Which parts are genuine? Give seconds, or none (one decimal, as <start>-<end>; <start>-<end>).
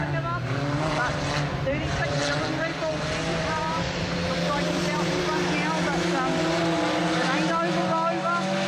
0.0-0.4; 2.2-3.3; 5.2-8.7